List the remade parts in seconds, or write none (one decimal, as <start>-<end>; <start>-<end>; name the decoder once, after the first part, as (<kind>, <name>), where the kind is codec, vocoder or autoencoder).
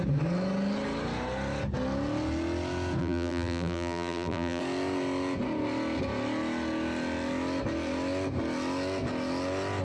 3.0-4.6 (vocoder, BigVGAN v2)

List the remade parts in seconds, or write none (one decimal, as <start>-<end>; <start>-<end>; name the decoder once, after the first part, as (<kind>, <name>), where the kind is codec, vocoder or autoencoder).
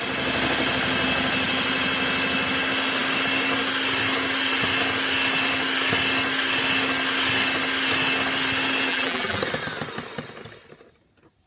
8.9-9.4 (vocoder, BigVGAN v2)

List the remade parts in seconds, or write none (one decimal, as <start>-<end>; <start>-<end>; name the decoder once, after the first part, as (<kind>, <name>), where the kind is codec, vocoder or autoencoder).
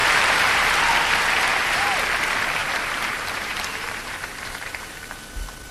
0.0-0.8 (vocoder, BigVGAN v2); 1.5-2.0; 2.6-4.7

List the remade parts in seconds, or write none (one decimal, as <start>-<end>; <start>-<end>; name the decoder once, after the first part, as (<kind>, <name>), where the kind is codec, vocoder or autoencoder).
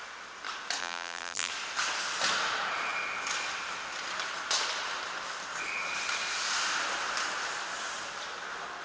0.8-1.5 (vocoder, BigVGAN v2)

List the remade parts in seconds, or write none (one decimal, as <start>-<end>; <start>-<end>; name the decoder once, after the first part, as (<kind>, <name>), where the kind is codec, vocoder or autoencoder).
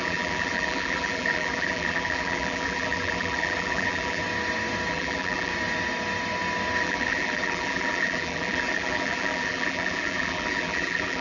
0.0-4.2 (vocoder, BigVGAN v2); 4.9-5.5; 6.8-11.2